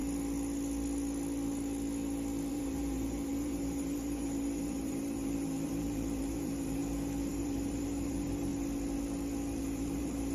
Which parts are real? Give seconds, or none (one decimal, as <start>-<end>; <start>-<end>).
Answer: 0.0-2.5; 6.8-7.3; 8.5-9.6